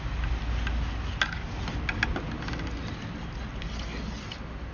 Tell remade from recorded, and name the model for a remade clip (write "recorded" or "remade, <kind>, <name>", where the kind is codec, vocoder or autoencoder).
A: recorded